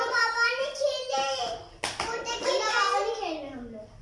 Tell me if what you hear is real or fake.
real